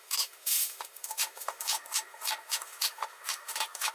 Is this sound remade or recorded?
remade